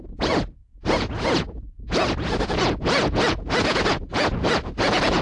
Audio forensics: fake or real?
fake